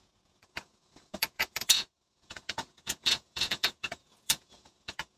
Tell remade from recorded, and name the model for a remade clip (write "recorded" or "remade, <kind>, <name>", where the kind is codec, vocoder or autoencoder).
remade, vocoder, Vocos